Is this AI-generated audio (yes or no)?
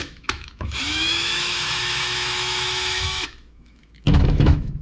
yes